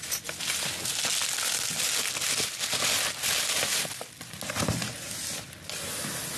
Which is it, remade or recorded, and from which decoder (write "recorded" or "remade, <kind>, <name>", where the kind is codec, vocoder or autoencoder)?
recorded